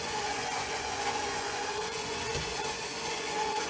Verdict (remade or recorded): remade